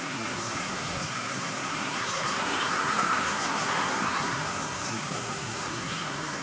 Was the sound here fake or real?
fake